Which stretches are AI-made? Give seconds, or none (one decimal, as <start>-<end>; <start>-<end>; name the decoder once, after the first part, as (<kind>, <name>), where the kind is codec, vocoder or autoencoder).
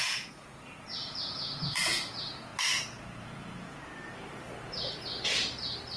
0.0-2.5 (vocoder, Vocos); 3.2-3.8